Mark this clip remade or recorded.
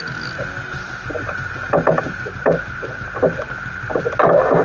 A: recorded